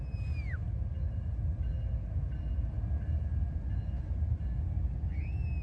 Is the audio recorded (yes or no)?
yes